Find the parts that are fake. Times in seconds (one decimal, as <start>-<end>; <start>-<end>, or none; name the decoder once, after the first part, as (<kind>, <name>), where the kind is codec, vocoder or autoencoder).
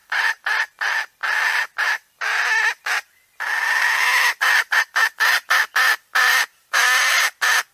0.0-0.5 (vocoder, BigVGAN v2); 6.1-6.8